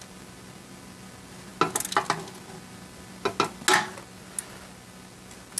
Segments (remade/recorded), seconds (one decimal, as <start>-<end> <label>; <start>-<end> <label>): 0.0-5.6 recorded